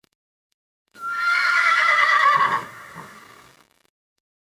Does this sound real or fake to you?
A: fake